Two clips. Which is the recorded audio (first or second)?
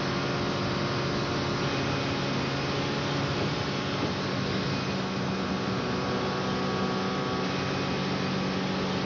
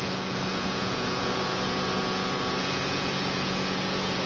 first